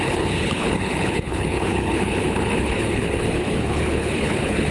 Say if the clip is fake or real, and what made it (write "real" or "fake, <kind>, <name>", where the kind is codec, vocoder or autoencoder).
fake, codec, HILCodec